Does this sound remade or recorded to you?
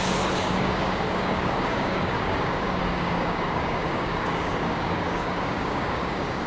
remade